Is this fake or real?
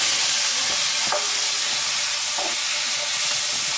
real